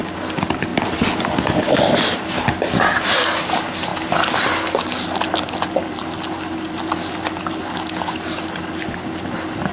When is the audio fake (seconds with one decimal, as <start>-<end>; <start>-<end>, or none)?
none